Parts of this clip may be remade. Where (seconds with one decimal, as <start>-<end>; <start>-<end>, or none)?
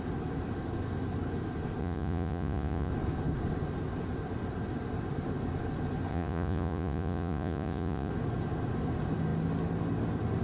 1.8-2.9; 6.1-8.1